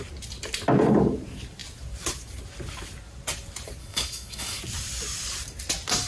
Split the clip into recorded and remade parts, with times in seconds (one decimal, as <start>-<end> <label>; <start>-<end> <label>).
0.0-3.8 recorded; 3.8-4.6 remade; 4.6-6.1 recorded

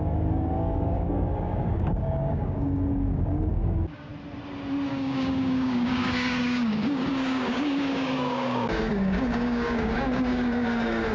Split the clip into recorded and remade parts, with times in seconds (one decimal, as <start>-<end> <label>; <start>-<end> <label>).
0.0-4.1 remade; 4.1-4.9 recorded; 4.9-11.1 remade

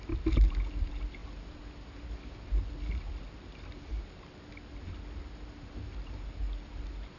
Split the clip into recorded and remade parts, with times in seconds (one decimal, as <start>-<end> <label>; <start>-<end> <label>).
0.0-7.2 recorded

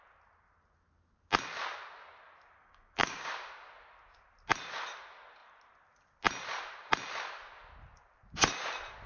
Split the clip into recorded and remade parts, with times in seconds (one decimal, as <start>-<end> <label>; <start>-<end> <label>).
0.0-2.6 recorded; 2.6-3.3 remade; 3.3-9.1 recorded

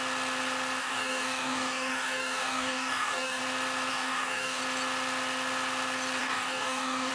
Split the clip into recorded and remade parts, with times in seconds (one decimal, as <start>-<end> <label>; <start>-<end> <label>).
0.0-0.8 recorded; 0.8-3.4 remade; 3.4-3.9 recorded; 3.9-4.6 remade; 4.6-6.2 recorded; 6.2-7.1 remade

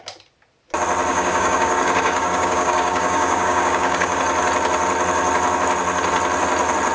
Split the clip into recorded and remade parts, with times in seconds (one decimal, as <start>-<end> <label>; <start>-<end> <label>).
0.0-1.1 recorded; 1.1-4.2 remade; 4.2-6.9 recorded

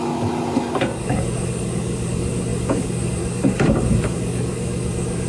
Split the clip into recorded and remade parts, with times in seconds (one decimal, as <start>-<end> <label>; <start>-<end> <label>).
0.0-5.3 remade